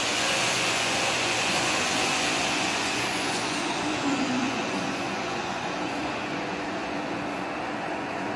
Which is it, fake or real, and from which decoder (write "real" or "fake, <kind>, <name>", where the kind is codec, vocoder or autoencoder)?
fake, vocoder, Vocos